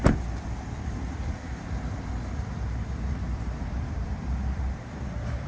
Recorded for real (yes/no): no